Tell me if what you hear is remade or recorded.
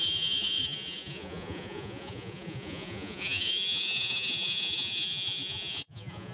remade